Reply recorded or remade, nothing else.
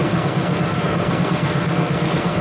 remade